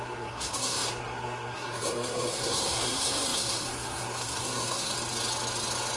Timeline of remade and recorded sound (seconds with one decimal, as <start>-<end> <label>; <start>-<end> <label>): 0.0-4.9 remade; 4.9-6.0 recorded